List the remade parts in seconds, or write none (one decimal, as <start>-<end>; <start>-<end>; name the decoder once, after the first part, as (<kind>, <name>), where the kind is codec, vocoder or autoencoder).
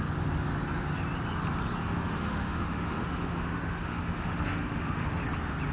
1.8-5.2 (autoencoder, DAC-VAE)